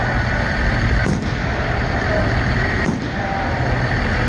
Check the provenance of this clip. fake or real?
real